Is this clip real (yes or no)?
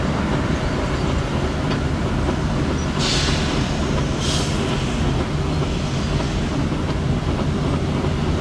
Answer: yes